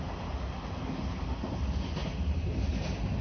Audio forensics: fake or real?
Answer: real